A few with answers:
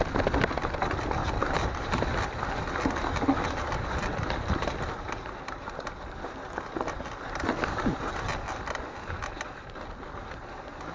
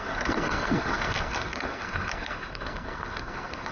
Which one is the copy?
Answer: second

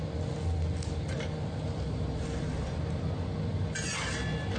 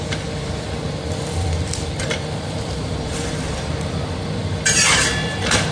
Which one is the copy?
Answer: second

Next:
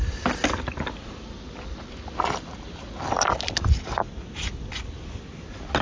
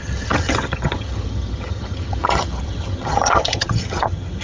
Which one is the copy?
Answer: second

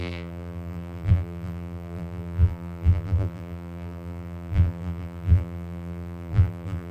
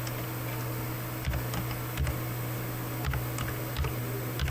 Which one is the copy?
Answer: first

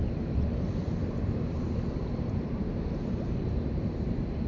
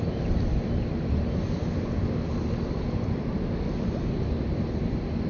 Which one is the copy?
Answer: first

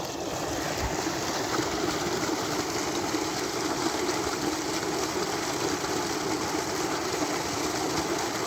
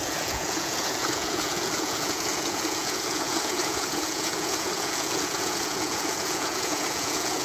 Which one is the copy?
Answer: second